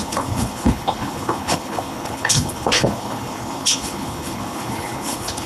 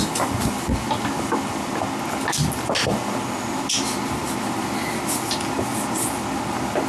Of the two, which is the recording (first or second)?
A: second